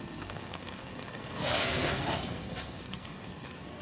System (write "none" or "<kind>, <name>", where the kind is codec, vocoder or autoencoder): codec, SNAC